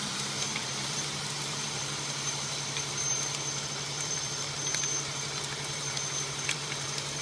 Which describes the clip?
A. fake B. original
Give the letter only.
A